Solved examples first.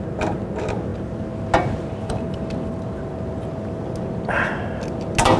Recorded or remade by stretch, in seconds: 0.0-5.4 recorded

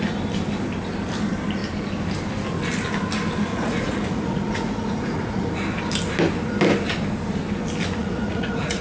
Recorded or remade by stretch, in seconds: 0.0-3.5 recorded; 3.5-5.5 remade; 5.5-8.0 recorded; 8.0-8.8 remade

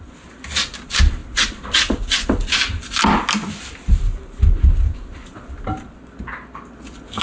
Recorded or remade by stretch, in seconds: 0.0-7.2 recorded

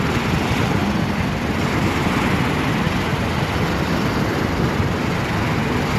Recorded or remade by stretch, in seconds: 0.0-6.0 recorded

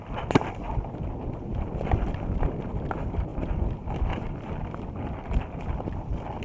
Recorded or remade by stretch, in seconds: 0.0-6.4 recorded